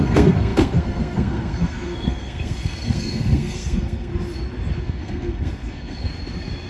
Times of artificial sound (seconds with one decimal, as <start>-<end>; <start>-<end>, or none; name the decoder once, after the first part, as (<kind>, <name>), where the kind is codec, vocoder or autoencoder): 0.0-4.1 (codec, SNAC); 4.8-6.1